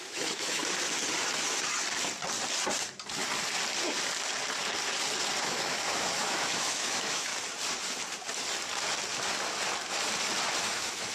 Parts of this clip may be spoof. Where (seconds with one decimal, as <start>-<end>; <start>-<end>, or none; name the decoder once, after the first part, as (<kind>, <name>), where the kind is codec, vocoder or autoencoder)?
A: 0.0-0.6 (autoencoder, DAC-VAE); 5.4-7.3; 10.6-11.1